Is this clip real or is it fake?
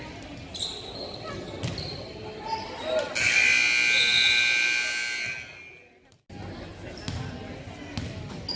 real